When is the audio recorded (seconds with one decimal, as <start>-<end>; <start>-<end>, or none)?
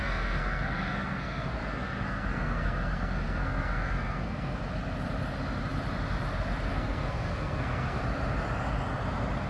4.6-6.7; 8.0-9.5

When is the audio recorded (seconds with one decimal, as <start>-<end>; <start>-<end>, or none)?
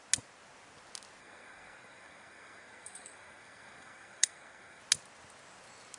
0.0-1.2; 4.8-6.0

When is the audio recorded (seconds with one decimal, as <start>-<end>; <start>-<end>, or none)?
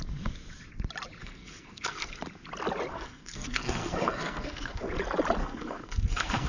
0.0-1.2; 2.1-2.9; 4.9-5.4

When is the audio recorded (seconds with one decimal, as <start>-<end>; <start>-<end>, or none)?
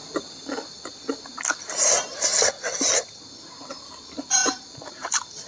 0.0-4.4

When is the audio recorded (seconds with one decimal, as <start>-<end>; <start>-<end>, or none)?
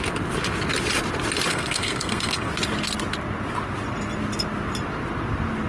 0.0-1.5; 2.5-5.7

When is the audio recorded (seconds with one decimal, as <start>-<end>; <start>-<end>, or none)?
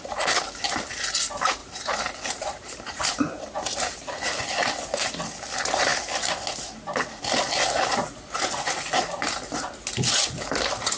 0.0-1.6; 4.0-11.0